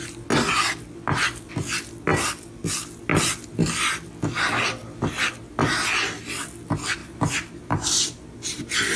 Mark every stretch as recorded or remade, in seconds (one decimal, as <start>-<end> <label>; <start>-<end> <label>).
0.0-7.0 recorded; 7.0-8.6 remade; 8.6-9.0 recorded